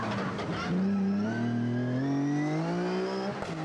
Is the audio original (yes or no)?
yes